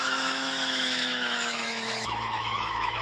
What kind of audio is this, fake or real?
fake